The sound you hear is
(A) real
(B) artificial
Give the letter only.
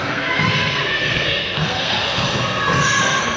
B